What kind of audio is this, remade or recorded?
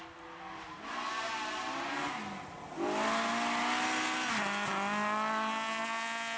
recorded